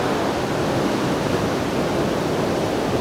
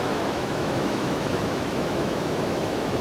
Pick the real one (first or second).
first